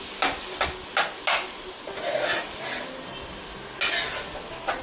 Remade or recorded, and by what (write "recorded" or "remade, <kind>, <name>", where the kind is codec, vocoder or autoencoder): recorded